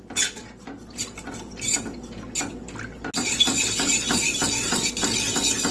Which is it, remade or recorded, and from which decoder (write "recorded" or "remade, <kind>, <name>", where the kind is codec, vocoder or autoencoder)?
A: recorded